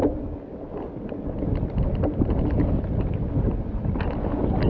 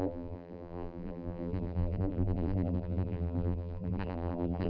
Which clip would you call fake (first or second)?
second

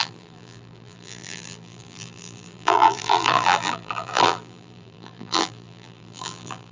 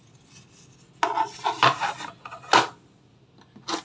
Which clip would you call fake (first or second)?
first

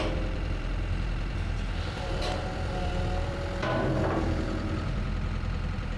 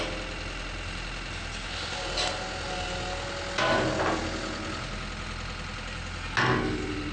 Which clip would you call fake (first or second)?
first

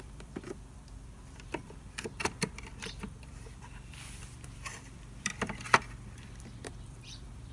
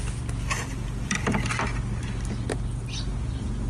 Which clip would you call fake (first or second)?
first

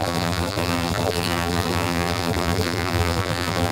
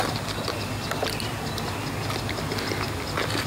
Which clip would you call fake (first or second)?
first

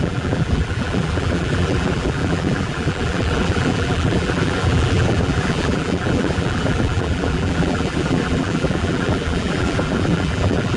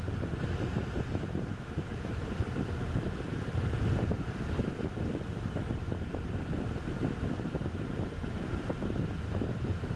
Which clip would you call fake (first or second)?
first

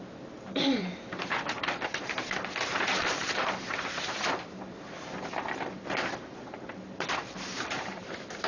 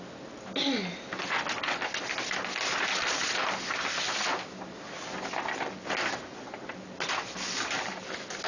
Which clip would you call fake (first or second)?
first